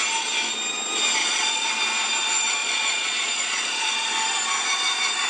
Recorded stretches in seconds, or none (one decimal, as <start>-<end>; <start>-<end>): 0.0-1.2; 1.7-2.6; 3.9-5.3